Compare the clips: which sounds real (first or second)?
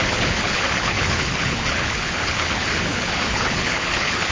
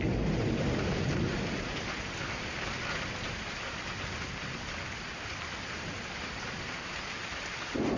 second